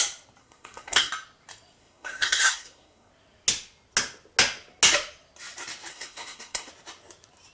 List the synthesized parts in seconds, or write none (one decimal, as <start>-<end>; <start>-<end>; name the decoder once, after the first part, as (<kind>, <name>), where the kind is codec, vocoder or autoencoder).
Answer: 0.4-1.1 (codec, SNAC); 1.8-3.1; 5.9-6.7